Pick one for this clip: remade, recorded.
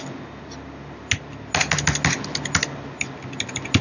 recorded